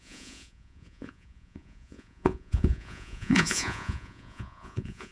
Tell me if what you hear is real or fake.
fake